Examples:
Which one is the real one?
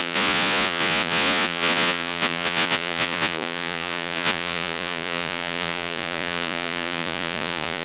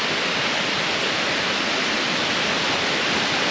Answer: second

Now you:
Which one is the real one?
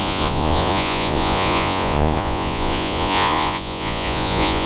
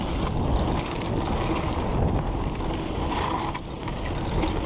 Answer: second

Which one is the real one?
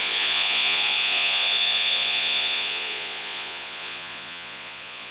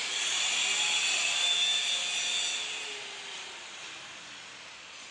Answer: second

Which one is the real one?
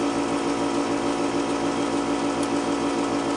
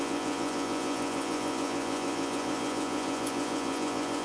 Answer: first